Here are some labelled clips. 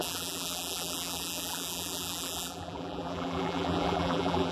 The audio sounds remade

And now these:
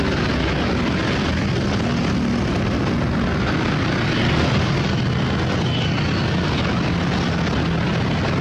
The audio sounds recorded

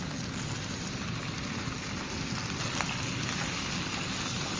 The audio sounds recorded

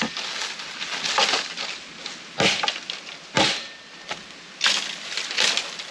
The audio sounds recorded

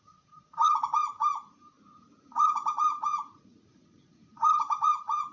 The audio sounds remade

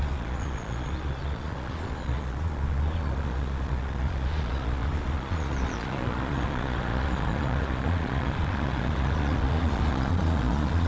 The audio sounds remade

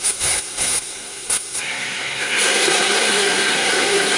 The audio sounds remade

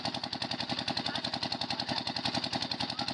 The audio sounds recorded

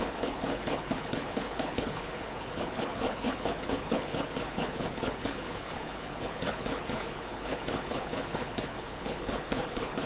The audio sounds remade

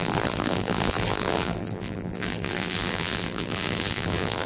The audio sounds remade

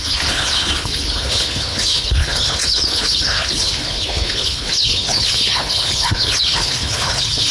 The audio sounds remade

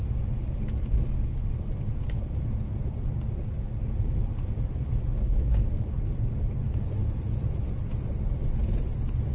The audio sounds recorded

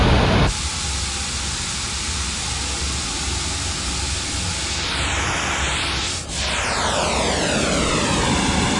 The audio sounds recorded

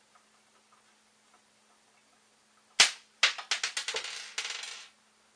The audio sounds recorded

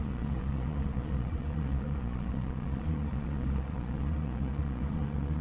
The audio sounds remade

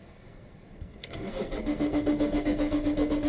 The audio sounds remade